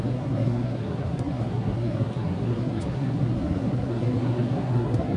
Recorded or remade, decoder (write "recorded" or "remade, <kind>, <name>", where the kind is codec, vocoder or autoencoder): remade, codec, SNAC